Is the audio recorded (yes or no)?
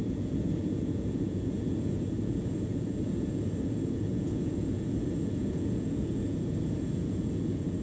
no